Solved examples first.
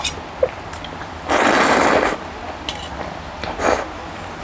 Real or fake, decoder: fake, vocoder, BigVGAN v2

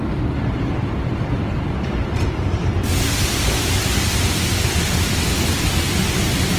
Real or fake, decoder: fake, vocoder, BigVGAN v2